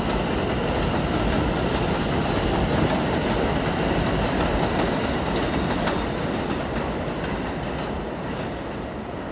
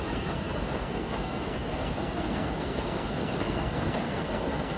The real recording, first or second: first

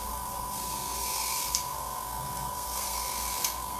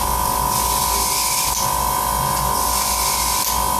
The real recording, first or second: second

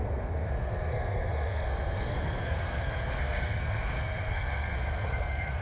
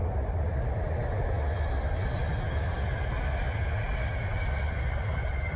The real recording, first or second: second